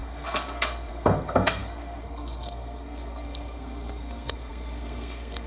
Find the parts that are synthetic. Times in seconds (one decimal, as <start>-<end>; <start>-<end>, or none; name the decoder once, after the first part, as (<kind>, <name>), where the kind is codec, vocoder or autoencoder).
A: 0.0-5.5 (codec, SNAC)